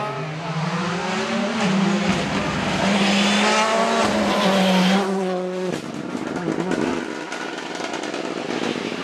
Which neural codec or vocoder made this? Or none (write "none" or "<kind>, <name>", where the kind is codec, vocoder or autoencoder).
none